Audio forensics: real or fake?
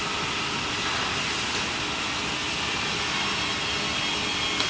real